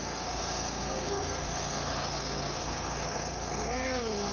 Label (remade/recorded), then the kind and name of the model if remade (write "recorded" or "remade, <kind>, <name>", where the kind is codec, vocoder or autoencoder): remade, codec, SNAC